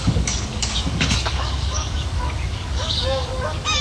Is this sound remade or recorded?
remade